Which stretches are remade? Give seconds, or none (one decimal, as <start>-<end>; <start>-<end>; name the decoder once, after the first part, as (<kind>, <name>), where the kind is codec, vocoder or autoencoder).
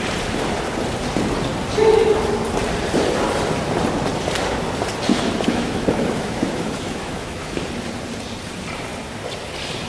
5.1-7.6 (autoencoder, DAC-VAE)